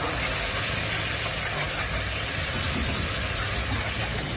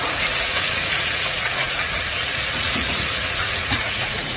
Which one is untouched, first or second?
first